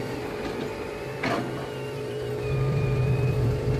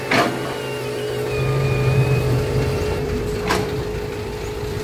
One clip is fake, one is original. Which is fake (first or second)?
first